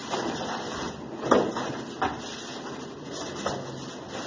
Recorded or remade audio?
recorded